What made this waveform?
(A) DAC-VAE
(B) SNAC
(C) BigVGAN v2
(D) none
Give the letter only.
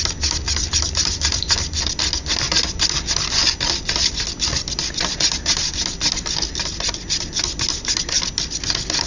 D